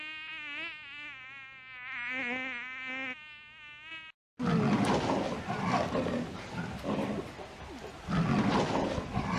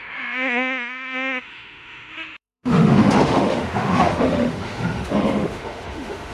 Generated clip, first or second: second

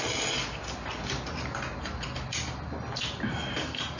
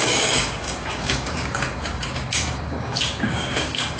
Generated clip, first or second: second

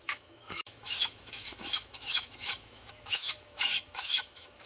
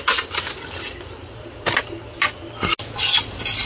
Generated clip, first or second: first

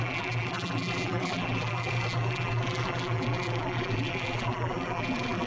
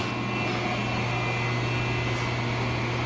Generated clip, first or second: first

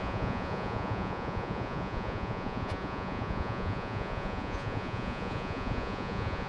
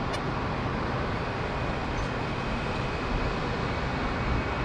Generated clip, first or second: first